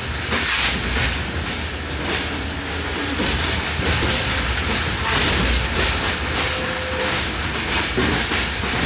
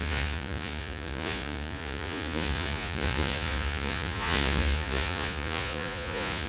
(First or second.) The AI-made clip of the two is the second